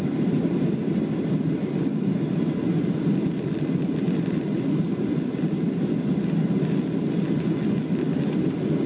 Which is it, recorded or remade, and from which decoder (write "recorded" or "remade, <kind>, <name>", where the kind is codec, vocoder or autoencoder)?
recorded